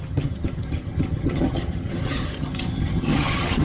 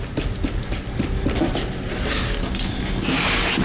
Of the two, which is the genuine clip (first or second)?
second